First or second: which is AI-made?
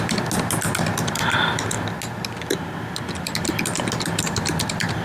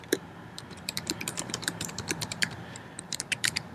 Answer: second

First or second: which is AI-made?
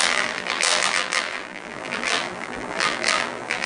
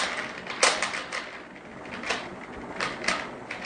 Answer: first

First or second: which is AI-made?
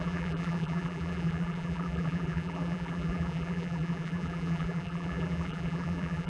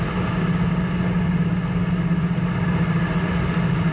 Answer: first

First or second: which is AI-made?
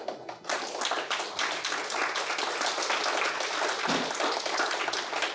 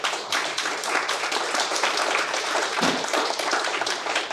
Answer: second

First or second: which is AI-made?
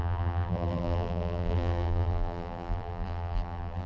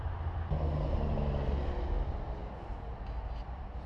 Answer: first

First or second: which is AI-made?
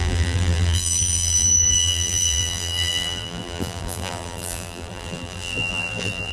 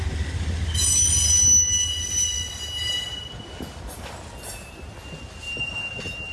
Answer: first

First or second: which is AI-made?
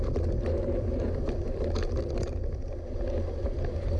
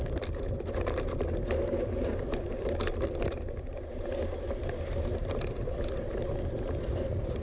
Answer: second